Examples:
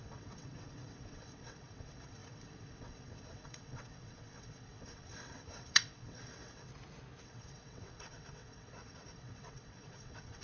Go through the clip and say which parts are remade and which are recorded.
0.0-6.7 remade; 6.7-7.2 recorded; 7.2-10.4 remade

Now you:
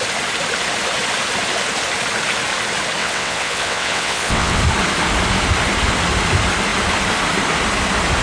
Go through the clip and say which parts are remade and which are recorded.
0.0-3.0 recorded; 3.0-4.6 remade; 4.6-8.2 recorded

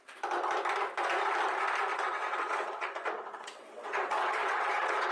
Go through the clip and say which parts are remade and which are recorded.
0.0-1.9 recorded; 1.9-5.1 remade

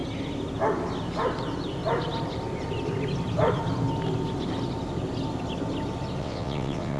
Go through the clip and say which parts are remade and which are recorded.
0.0-6.2 recorded; 6.2-7.0 remade